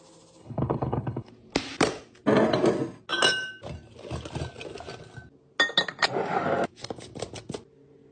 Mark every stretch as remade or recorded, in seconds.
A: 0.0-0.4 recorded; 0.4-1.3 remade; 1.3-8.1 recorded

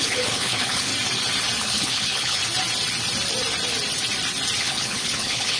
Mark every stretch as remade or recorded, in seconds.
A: 0.0-0.9 remade; 0.9-1.6 recorded; 1.6-2.4 remade; 2.4-4.6 recorded; 4.6-5.6 remade

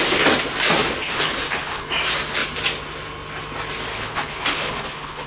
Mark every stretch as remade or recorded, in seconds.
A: 0.0-1.0 recorded; 1.0-1.9 remade; 1.9-3.9 recorded; 3.9-5.3 remade

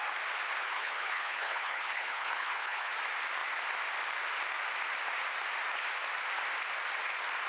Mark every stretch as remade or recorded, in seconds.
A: 0.0-0.6 recorded; 0.6-2.9 remade; 2.9-7.5 recorded

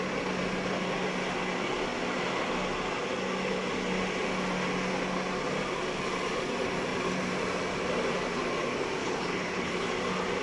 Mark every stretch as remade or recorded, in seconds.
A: 0.0-9.0 recorded; 9.0-9.9 remade; 9.9-10.4 recorded